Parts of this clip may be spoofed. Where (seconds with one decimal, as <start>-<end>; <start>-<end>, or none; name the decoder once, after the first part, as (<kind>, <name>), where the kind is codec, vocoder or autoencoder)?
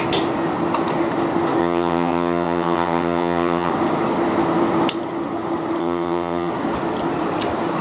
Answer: 1.6-3.7 (vocoder, HiFi-GAN); 5.8-6.5